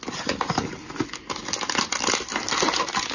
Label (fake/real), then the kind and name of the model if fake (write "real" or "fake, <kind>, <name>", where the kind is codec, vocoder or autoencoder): real